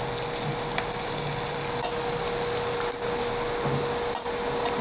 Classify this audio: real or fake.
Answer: real